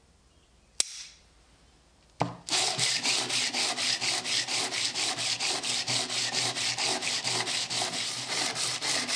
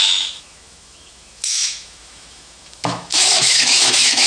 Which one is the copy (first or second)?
second